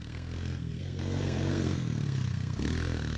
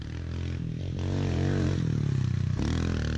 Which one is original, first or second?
second